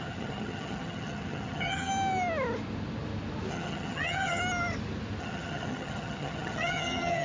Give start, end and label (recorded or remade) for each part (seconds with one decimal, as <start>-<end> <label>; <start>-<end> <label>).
0.0-1.9 remade; 1.9-3.5 recorded; 3.5-4.4 remade; 4.4-5.2 recorded; 5.2-7.2 remade